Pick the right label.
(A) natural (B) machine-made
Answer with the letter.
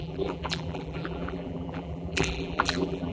B